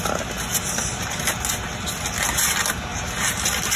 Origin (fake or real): real